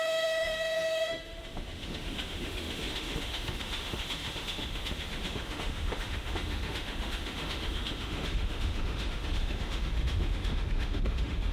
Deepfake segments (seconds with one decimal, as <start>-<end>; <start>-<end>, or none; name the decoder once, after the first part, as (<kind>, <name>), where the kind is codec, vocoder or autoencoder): 0.0-11.5 (autoencoder, DAC-VAE)